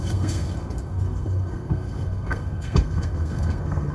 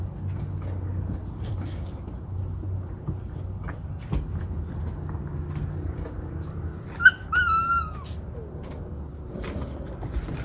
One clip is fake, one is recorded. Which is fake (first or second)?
first